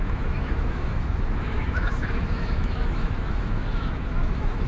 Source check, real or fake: fake